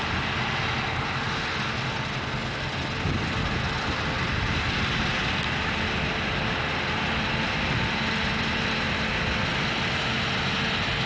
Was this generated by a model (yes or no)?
no